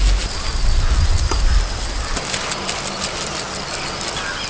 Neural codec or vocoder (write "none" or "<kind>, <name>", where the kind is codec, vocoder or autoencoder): none